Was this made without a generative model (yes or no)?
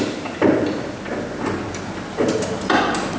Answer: yes